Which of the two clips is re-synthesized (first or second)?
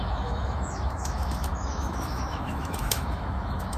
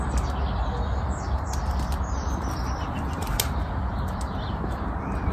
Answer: first